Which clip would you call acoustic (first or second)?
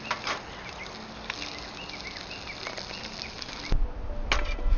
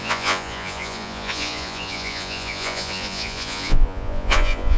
first